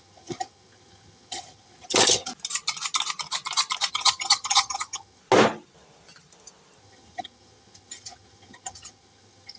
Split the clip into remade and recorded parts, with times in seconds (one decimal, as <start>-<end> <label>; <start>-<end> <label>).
0.0-2.3 remade; 2.3-3.9 recorded; 3.9-5.2 remade; 5.2-6.8 recorded; 6.8-9.6 remade